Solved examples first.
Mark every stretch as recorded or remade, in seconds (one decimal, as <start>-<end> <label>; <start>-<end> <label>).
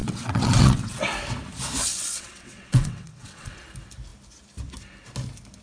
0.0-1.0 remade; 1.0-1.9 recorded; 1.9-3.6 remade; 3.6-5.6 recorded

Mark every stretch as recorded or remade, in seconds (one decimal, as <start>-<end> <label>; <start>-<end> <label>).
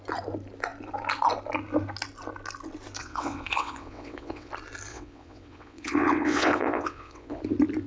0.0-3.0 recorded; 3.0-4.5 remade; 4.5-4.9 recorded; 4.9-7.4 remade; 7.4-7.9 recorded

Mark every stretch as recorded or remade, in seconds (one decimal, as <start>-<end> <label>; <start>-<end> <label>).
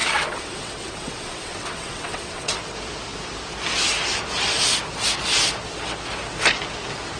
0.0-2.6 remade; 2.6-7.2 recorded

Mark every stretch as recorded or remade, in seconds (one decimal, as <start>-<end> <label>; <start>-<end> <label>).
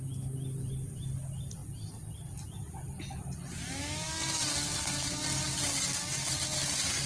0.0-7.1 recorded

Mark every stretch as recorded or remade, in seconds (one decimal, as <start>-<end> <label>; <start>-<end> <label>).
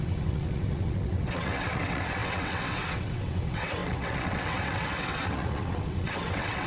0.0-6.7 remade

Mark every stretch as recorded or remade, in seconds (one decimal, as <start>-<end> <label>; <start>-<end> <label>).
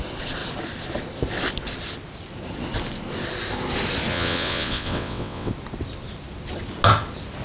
0.0-4.1 recorded; 4.1-5.5 remade; 5.5-7.4 recorded